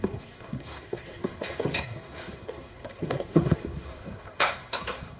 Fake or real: fake